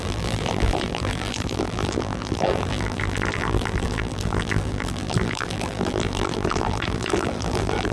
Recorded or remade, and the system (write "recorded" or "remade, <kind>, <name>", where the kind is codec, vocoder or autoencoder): remade, vocoder, BigVGAN v2